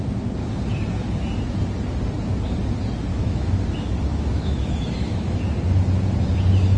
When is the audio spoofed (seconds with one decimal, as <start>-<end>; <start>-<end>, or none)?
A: 3.1-3.6; 4.1-5.4